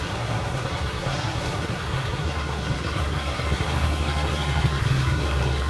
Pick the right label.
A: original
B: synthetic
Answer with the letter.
B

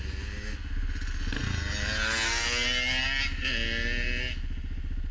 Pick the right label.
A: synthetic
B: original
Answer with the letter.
B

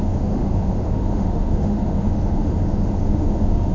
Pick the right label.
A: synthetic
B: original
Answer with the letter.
A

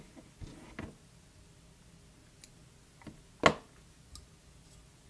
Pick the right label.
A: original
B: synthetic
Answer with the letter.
A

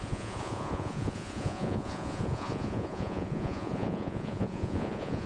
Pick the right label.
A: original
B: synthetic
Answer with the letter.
B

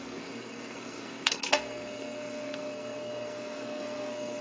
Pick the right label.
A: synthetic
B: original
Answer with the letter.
A